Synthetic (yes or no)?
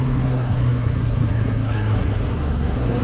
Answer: yes